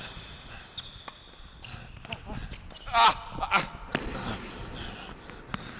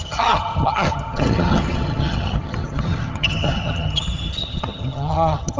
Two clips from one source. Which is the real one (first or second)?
first